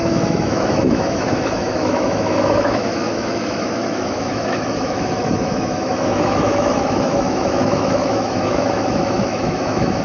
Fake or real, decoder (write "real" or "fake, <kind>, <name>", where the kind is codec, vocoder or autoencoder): fake, autoencoder, DAC-VAE